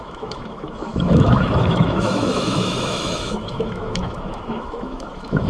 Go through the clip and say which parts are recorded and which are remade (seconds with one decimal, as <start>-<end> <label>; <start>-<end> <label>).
0.0-5.5 remade